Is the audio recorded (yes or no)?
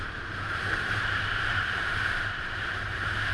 yes